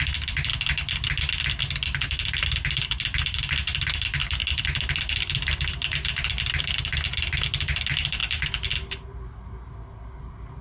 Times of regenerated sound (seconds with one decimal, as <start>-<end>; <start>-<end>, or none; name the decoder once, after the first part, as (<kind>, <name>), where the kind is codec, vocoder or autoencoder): none